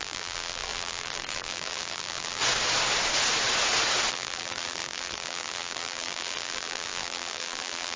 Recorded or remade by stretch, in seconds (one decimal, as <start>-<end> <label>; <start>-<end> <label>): 0.0-2.4 remade; 2.4-4.1 recorded; 4.1-8.0 remade